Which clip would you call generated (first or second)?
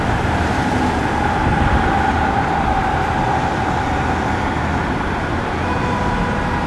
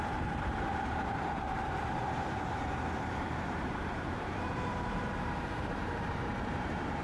second